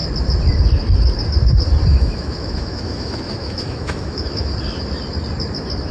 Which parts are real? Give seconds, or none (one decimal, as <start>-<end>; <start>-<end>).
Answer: 0.0-1.9; 4.5-5.9